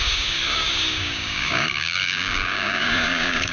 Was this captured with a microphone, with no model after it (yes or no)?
no